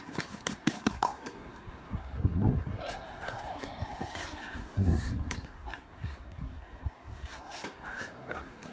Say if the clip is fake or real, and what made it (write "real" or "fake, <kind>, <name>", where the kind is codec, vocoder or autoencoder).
fake, codec, SNAC